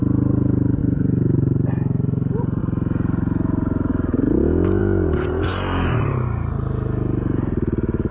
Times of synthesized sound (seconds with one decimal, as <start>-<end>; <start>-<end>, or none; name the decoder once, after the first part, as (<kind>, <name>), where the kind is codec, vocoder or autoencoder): none